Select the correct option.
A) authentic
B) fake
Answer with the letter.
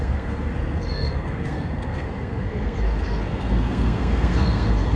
B